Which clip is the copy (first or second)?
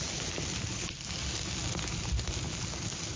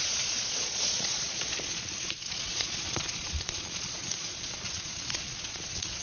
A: second